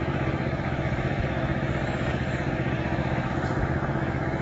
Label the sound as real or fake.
fake